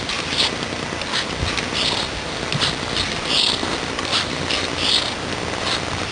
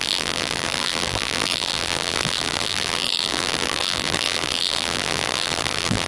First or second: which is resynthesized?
second